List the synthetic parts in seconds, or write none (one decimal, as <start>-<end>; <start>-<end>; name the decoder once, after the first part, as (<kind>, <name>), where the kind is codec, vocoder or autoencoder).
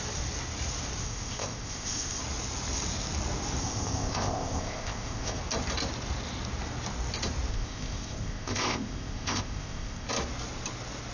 1.0-2.2 (codec, ZipCodec); 3.6-5.4; 7.5-10.1